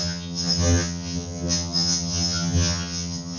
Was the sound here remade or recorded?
remade